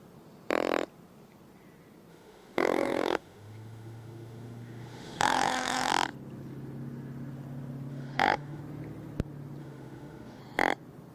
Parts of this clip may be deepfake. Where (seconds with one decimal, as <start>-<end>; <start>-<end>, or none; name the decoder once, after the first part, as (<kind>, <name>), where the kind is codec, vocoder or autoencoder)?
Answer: 2.1-5.9 (autoencoder, DAC-VAE); 7.9-8.6; 9.6-10.4